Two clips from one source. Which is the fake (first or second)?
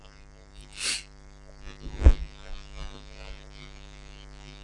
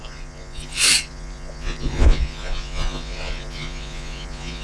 second